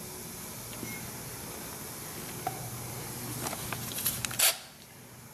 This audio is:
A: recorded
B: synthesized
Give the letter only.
A